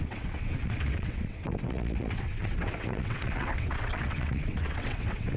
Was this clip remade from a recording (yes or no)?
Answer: yes